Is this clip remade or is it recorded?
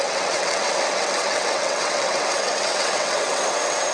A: remade